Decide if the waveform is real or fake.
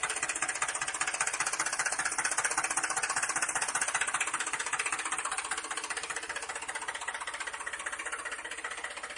real